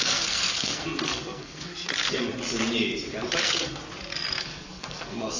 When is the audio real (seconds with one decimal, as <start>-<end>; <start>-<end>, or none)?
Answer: 2.3-3.4; 3.8-4.4